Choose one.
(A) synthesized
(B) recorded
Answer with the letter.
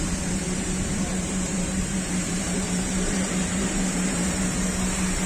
A